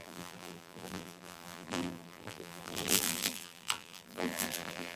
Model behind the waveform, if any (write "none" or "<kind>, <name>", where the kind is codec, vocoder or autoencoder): vocoder, BigVGAN v2